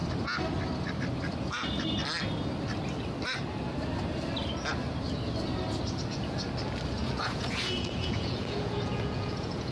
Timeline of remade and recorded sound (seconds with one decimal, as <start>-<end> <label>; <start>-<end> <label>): 0.0-7.0 recorded; 7.0-9.7 remade